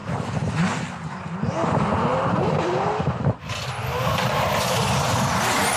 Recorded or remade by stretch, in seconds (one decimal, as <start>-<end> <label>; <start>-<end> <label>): 0.0-5.8 recorded

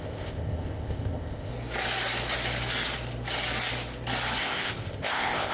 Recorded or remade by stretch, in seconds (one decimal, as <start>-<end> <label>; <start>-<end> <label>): 0.0-1.5 remade; 1.5-4.4 recorded; 4.4-5.5 remade